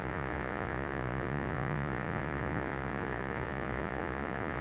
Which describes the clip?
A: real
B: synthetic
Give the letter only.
B